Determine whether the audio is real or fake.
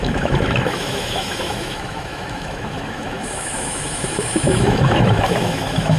fake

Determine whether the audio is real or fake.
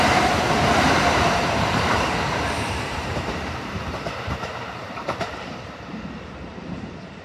fake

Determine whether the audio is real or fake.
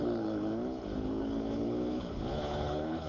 fake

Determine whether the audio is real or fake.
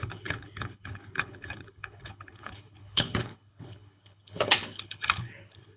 fake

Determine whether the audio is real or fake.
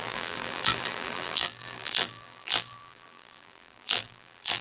fake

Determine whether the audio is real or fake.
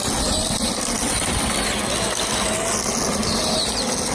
real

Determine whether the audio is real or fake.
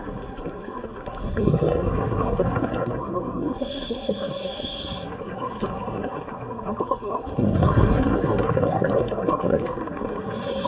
fake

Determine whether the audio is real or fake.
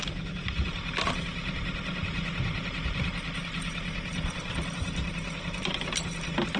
real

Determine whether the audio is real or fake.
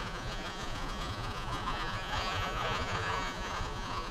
fake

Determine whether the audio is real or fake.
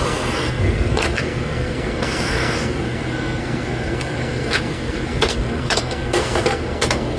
fake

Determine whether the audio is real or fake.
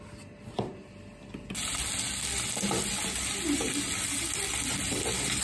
real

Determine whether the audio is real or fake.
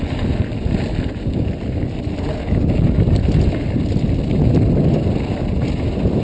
real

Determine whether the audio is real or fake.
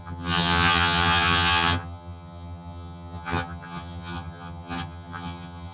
fake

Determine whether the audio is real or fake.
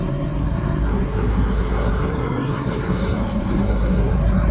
fake